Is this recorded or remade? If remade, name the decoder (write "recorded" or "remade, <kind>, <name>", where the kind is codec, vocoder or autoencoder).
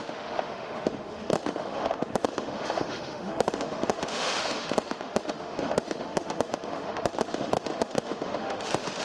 remade, autoencoder, DAC-VAE